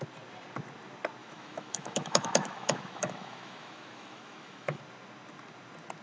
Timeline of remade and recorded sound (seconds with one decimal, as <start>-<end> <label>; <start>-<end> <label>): 0.0-1.2 recorded; 1.2-4.8 remade; 4.8-6.0 recorded